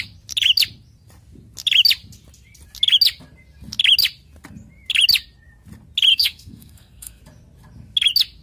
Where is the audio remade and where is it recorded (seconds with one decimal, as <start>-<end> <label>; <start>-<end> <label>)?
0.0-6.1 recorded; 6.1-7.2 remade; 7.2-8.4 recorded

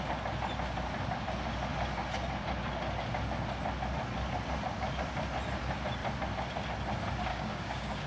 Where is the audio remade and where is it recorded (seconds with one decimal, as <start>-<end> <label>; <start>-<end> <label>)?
0.0-7.3 recorded; 7.3-8.1 remade

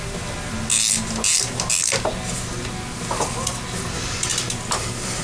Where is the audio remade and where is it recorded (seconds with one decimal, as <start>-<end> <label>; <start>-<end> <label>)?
0.0-5.2 recorded

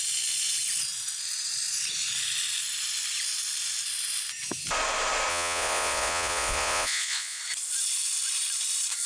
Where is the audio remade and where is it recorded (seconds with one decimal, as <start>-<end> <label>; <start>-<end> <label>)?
0.0-5.3 recorded; 5.3-7.4 remade; 7.4-9.1 recorded

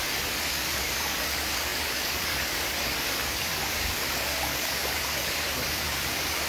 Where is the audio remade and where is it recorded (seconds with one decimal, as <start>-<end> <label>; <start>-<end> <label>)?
0.0-6.5 remade